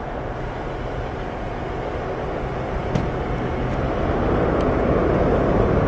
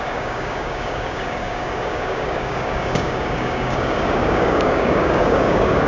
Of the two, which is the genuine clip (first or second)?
first